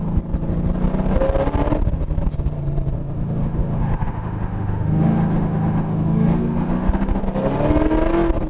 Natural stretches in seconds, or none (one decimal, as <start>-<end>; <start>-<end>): 0.0-3.0; 7.2-8.5